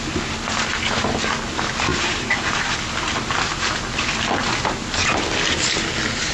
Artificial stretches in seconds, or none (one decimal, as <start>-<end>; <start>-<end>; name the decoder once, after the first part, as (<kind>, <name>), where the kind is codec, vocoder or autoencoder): none